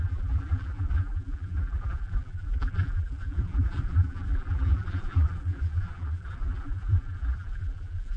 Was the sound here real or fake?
fake